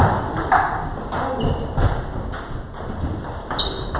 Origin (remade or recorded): recorded